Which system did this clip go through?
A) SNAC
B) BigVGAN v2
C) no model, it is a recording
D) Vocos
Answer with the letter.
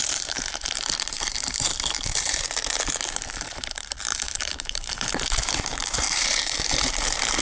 B